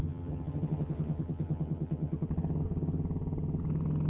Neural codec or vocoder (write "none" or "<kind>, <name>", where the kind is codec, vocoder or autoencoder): vocoder, HiFi-GAN